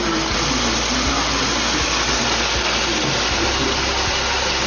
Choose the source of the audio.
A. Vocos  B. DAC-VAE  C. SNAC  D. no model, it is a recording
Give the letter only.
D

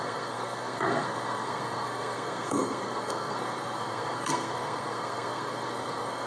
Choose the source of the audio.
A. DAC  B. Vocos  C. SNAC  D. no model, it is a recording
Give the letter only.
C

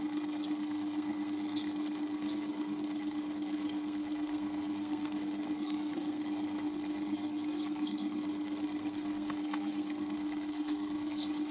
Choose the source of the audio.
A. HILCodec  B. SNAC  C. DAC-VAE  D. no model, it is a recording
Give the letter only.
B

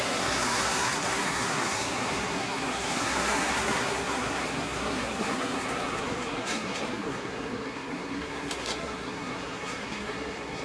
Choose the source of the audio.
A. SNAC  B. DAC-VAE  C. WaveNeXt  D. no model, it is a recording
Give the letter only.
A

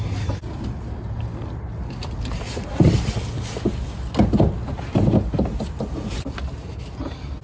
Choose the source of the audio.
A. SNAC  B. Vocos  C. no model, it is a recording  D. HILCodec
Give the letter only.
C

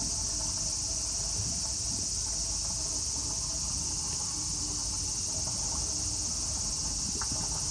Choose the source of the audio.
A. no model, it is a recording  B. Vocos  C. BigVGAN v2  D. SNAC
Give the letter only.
A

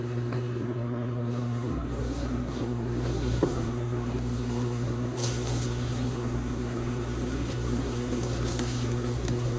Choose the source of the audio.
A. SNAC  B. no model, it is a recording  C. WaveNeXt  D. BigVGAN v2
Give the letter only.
A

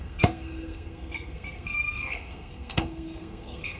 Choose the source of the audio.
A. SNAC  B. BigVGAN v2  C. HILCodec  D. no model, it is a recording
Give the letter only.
A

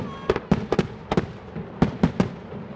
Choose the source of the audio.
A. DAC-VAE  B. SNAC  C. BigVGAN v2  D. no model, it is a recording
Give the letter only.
D